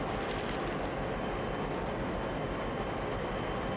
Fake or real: real